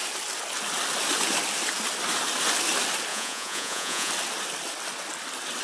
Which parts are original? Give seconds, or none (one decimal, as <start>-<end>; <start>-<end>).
0.0-3.1; 4.1-5.6